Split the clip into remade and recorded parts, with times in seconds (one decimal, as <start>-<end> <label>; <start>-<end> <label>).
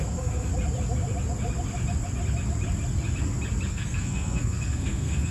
0.0-0.5 remade; 0.5-3.7 recorded; 3.7-5.3 remade